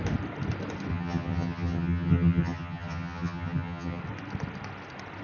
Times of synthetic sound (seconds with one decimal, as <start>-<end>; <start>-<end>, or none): 0.9-4.0